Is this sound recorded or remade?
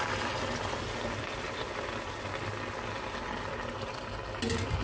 recorded